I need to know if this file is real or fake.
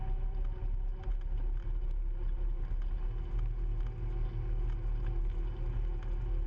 real